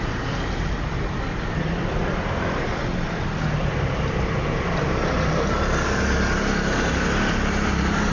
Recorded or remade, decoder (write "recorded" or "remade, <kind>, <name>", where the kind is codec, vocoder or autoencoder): recorded